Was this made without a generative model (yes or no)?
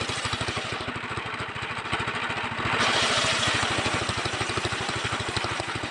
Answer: no